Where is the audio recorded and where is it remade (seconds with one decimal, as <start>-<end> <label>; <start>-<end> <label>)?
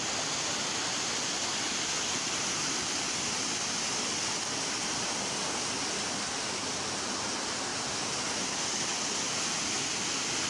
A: 0.0-10.5 recorded